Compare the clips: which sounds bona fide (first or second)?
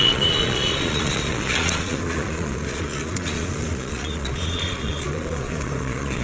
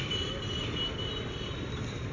second